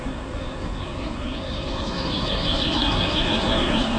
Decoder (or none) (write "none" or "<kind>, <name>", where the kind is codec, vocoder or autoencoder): codec, SNAC